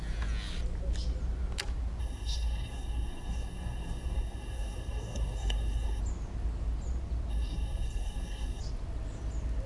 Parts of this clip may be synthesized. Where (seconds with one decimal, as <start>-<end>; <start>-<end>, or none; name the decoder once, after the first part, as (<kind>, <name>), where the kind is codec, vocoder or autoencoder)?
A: 2.0-6.0 (codec, SNAC); 7.3-8.6